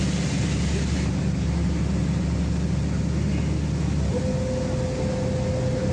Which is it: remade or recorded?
recorded